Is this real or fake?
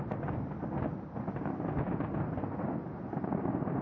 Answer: real